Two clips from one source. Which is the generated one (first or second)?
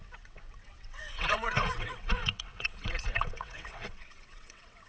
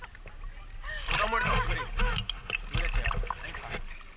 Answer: first